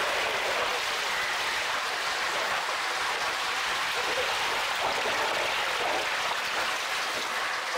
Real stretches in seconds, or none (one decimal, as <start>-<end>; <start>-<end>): 0.0-7.8